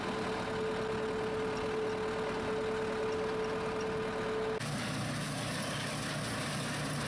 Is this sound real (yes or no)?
yes